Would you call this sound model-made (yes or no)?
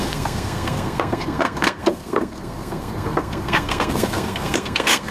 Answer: yes